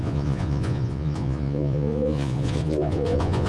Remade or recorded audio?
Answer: remade